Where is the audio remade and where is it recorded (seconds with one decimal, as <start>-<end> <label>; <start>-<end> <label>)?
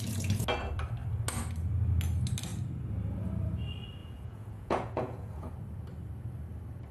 0.0-4.0 recorded; 4.0-5.5 remade; 5.5-6.9 recorded